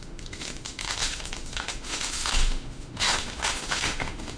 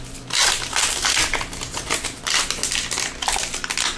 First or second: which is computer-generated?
first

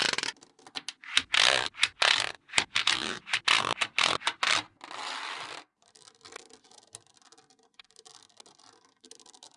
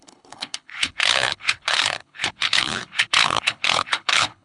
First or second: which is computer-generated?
second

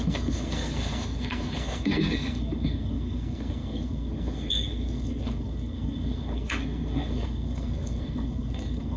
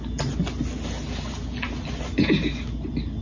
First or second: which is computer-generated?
first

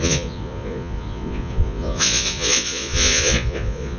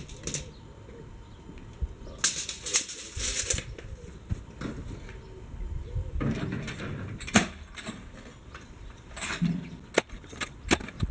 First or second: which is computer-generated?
first